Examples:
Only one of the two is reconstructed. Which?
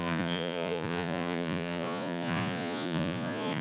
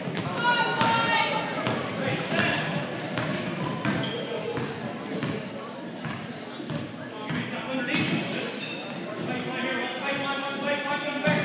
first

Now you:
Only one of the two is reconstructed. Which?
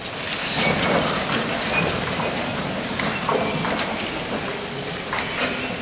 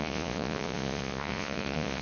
second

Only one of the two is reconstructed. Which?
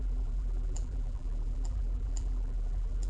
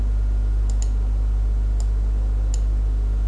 first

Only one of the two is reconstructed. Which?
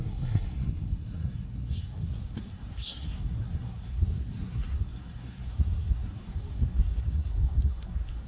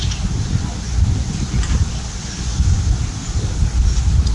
first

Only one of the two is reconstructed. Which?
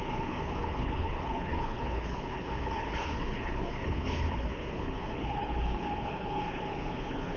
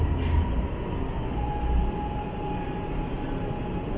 first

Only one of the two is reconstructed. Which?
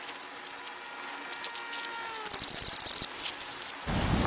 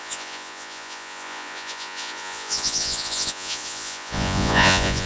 second